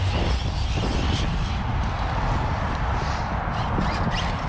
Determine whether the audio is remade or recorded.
recorded